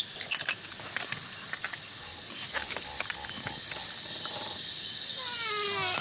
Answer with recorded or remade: recorded